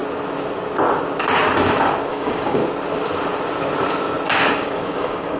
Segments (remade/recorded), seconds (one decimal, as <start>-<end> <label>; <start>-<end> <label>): 0.0-2.1 recorded; 2.1-2.6 remade; 2.6-4.5 recorded; 4.5-5.4 remade